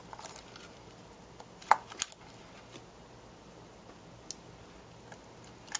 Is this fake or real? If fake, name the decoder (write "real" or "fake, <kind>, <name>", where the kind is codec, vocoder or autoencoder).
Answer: real